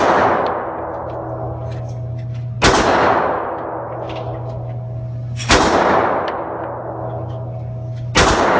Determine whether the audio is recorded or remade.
recorded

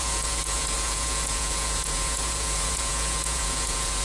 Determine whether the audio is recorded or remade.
remade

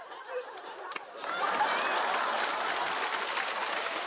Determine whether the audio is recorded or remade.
recorded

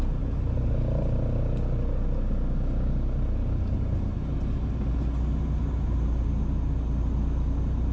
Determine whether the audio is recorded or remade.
recorded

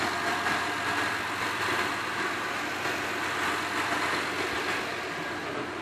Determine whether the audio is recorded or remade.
recorded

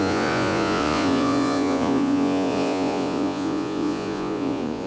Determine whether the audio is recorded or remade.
remade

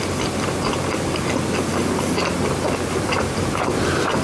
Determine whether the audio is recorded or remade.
recorded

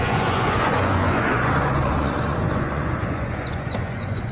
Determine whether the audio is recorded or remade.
remade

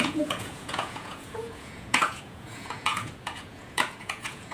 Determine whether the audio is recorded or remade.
remade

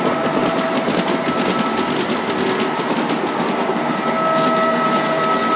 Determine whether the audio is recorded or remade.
recorded